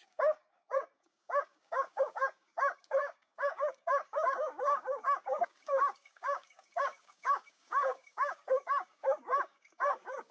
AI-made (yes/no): yes